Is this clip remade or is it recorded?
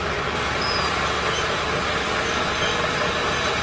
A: recorded